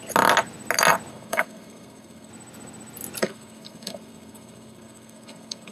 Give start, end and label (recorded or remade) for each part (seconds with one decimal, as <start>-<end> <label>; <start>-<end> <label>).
0.0-1.1 recorded; 1.1-2.3 remade; 2.3-3.2 recorded; 3.2-5.7 remade